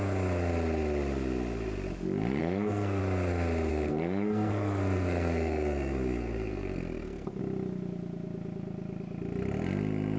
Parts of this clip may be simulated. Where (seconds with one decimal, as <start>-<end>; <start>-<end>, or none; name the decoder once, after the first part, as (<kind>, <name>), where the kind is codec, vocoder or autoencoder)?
2.4-3.0 (codec, SNAC); 3.7-7.4